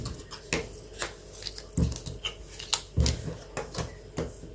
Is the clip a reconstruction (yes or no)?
no